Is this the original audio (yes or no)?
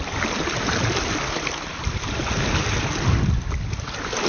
yes